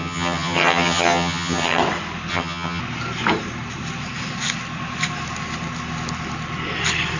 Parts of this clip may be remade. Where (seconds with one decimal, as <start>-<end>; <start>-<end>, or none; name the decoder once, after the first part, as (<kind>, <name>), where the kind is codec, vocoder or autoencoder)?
0.0-1.8 (vocoder, HiFi-GAN); 2.3-2.8